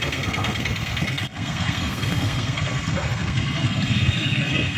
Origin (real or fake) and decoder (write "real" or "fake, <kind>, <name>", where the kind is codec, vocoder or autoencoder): fake, codec, SNAC